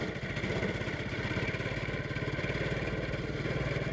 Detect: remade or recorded recorded